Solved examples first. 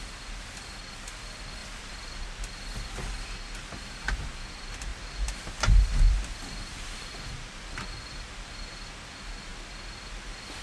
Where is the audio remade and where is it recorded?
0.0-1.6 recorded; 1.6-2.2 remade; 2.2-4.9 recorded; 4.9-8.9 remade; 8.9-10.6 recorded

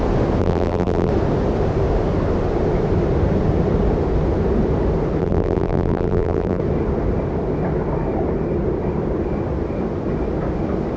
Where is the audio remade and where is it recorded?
0.0-0.4 recorded; 0.4-1.1 remade; 1.1-5.2 recorded; 5.2-6.6 remade; 6.6-11.0 recorded

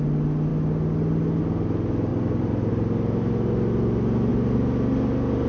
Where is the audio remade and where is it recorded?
0.0-2.1 recorded; 2.1-2.7 remade; 2.7-5.5 recorded

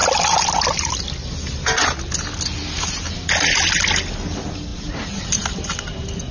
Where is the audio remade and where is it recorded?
0.0-6.3 recorded

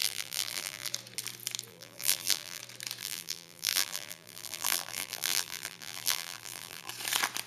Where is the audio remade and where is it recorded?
0.0-0.9 remade; 0.9-1.7 recorded; 1.7-2.6 remade; 2.6-3.0 recorded; 3.0-6.9 remade; 6.9-7.5 recorded

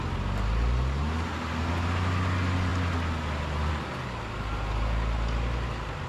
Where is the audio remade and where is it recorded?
0.0-6.1 recorded